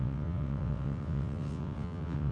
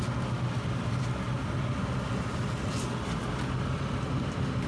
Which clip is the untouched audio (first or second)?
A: second